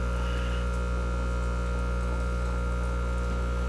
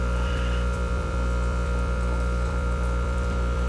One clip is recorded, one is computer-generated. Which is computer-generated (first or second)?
second